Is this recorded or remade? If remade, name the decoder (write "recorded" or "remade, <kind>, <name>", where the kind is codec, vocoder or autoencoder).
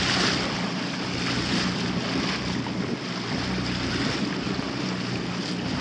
recorded